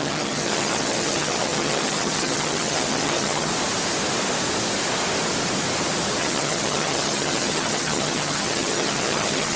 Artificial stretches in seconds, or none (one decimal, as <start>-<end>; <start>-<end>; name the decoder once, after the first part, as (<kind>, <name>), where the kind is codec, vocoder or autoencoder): 0.0-3.5 (vocoder, HiFi-GAN); 6.2-9.6